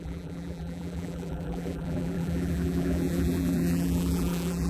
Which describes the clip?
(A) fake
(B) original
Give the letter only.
A